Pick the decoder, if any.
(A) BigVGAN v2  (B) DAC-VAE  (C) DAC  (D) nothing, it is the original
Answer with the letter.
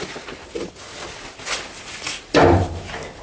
D